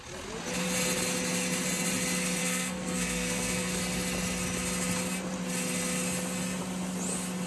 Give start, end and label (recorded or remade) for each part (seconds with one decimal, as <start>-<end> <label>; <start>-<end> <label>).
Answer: 0.0-2.4 recorded; 2.4-3.8 remade; 3.8-7.5 recorded